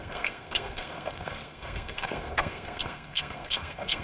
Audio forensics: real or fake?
fake